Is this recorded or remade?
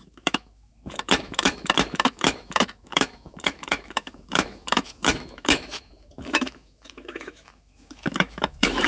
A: remade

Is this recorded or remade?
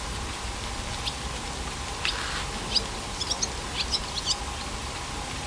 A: recorded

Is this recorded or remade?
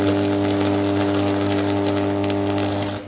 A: recorded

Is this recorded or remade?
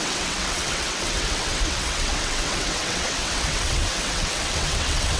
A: remade